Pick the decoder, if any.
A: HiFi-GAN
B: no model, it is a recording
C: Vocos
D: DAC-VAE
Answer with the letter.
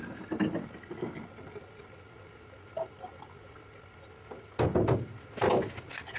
B